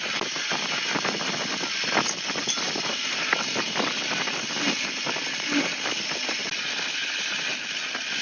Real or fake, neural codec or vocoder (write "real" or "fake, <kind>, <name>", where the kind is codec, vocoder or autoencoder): real